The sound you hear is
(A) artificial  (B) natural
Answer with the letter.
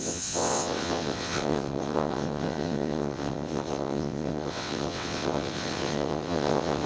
A